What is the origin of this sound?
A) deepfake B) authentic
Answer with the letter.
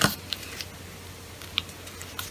B